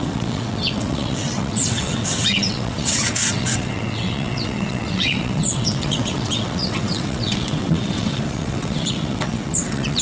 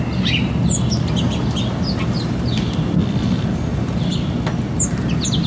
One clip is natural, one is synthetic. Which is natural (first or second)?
second